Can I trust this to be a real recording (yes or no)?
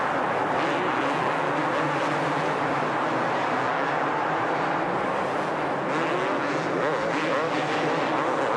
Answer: yes